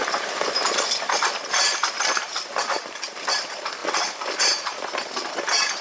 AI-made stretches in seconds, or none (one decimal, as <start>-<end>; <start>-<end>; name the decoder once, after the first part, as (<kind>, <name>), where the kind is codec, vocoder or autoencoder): 0.0-3.8 (vocoder, BigVGAN v2); 4.4-5.8